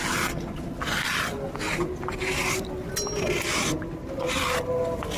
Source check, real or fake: real